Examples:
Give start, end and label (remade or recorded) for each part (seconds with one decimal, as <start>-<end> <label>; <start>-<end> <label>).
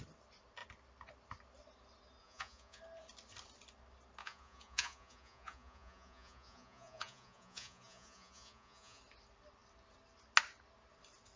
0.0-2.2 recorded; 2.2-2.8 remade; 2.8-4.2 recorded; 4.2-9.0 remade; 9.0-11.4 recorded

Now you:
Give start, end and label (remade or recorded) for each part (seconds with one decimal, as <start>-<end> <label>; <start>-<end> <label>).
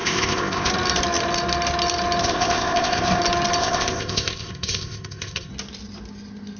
0.0-0.7 remade; 0.7-2.2 recorded; 2.2-3.2 remade; 3.2-3.6 recorded; 3.6-5.5 remade; 5.5-6.6 recorded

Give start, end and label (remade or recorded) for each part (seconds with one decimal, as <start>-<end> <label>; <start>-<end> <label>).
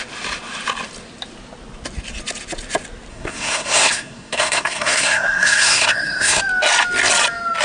0.0-3.1 recorded; 3.1-6.4 remade; 6.4-7.6 recorded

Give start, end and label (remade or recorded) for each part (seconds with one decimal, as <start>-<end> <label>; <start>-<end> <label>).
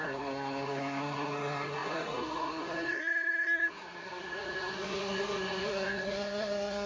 0.0-6.9 remade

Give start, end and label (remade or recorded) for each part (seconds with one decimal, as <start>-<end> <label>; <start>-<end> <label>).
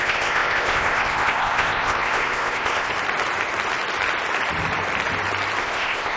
0.0-2.9 remade; 2.9-5.6 recorded; 5.6-6.2 remade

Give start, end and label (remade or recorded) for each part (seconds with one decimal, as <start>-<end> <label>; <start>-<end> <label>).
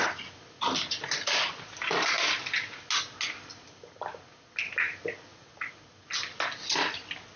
0.0-5.3 recorded; 5.3-5.8 remade; 5.8-7.4 recorded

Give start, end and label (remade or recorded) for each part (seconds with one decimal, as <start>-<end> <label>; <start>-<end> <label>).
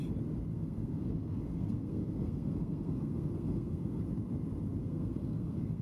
0.0-0.5 recorded; 0.5-4.0 remade; 4.0-4.8 recorded; 4.8-5.8 remade